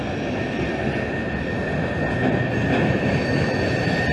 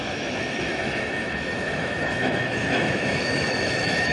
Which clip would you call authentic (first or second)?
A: first